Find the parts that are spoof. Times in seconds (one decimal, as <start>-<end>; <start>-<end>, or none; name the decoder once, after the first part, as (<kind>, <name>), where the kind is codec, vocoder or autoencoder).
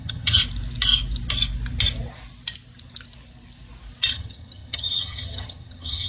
0.0-0.4 (vocoder, HiFi-GAN); 4.1-6.1